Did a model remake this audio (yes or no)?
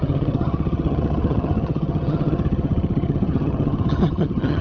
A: yes